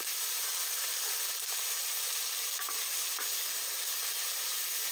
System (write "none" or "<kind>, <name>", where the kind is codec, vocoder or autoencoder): vocoder, BigVGAN v2